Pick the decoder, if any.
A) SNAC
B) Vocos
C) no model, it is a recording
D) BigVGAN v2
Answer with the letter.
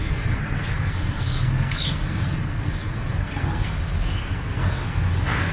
A